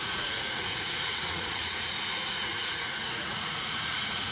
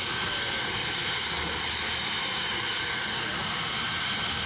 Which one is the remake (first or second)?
first